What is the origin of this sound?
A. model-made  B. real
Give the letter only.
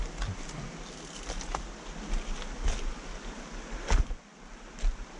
B